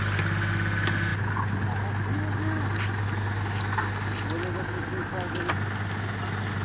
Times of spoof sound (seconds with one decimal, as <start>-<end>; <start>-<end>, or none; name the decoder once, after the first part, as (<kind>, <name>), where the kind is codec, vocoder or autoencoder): none